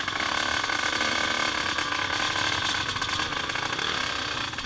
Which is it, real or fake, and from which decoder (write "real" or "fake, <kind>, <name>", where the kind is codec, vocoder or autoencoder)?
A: real